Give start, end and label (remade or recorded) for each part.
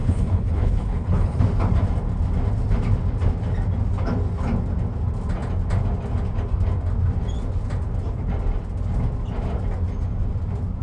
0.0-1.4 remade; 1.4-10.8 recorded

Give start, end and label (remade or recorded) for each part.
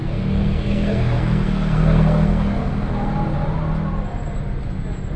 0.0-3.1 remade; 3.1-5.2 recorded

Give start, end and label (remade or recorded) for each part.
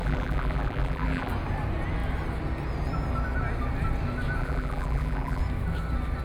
0.0-1.3 remade; 1.3-4.4 recorded; 4.4-5.4 remade; 5.4-6.2 recorded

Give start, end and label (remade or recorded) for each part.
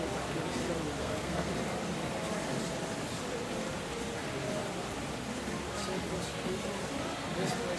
0.0-1.0 recorded; 1.0-1.5 remade; 1.5-7.8 recorded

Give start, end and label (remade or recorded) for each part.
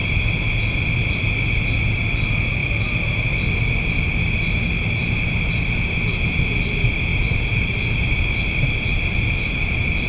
0.0-7.1 recorded; 7.1-10.1 remade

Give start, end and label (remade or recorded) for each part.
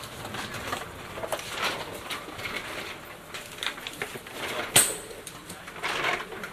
0.0-0.6 recorded; 0.6-6.5 remade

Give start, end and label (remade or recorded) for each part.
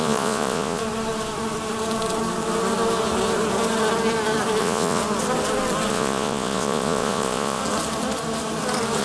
0.0-0.8 remade; 0.8-4.6 recorded; 4.6-5.0 remade; 5.0-5.9 recorded; 5.9-7.6 remade; 7.6-9.0 recorded